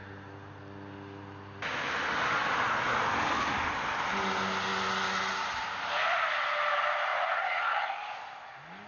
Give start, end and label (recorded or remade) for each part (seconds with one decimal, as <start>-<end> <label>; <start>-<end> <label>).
0.0-7.1 recorded; 7.1-7.6 remade; 7.6-8.9 recorded